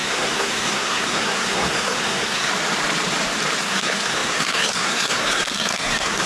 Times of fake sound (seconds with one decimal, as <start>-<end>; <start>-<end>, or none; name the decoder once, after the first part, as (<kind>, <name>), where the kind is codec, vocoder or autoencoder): 0.0-2.5 (codec, SNAC); 3.6-6.3